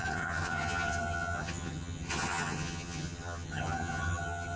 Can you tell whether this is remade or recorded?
remade